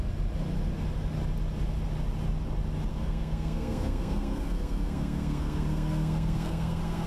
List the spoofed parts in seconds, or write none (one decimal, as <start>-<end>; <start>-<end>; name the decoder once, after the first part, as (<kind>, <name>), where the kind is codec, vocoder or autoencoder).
2.9-7.1 (codec, SNAC)